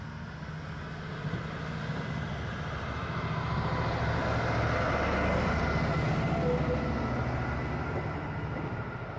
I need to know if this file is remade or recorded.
recorded